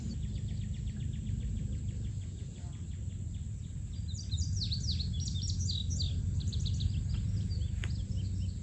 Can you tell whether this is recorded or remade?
recorded